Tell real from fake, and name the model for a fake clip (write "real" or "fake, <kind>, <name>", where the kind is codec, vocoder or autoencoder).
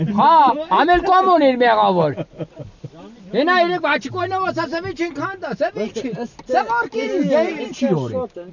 real